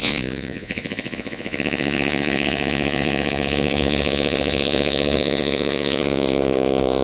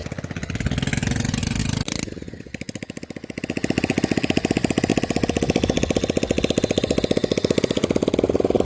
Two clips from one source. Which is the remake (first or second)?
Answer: first